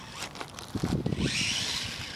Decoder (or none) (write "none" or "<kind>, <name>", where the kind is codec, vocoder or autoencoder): none